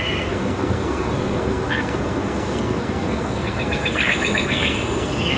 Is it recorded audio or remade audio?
remade